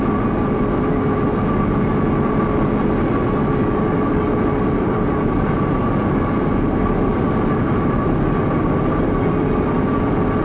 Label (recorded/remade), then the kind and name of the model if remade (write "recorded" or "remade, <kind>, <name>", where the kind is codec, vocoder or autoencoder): recorded